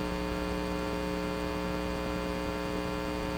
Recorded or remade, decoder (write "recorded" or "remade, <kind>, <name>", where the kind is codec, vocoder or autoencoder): recorded